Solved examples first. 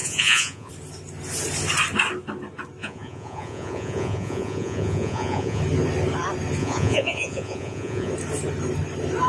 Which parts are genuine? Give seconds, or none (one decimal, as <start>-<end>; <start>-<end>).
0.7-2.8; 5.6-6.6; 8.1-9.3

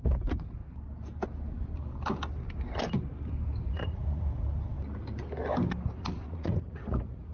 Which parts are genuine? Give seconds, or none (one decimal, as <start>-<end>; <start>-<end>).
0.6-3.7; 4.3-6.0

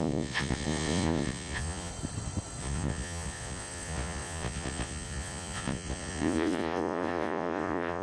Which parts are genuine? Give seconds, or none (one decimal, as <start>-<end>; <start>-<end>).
1.9-2.6

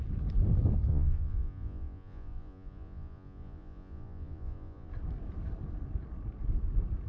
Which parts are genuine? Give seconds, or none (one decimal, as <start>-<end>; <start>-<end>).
0.0-0.9; 4.9-7.1

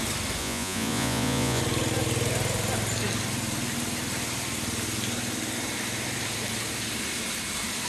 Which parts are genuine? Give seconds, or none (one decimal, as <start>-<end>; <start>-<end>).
0.0-0.4; 1.6-7.9